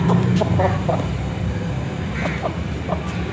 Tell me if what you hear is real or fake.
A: real